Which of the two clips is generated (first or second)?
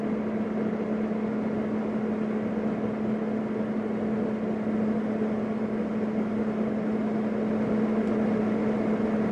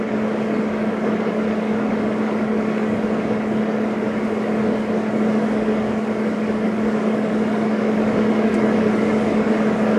second